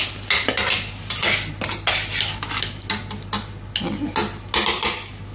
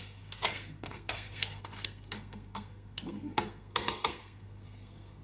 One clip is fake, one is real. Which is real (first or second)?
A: first